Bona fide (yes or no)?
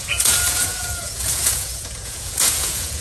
no